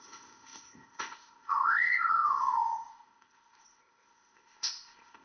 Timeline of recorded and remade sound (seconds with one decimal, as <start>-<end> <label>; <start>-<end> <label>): 0.0-5.2 remade